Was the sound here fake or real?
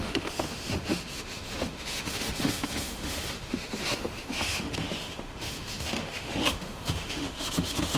fake